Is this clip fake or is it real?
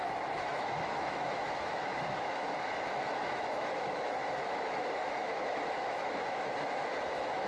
fake